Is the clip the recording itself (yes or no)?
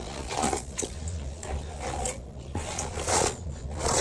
no